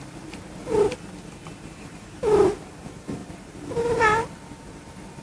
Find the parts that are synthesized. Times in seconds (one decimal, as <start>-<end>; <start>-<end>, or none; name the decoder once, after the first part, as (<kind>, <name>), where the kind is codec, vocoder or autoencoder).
0.0-0.6 (vocoder, BigVGAN v2); 1.8-5.2